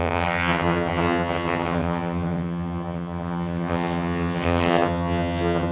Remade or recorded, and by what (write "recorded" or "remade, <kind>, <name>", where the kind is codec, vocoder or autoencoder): remade, vocoder, HiFi-GAN